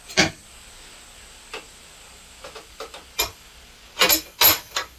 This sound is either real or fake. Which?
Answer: real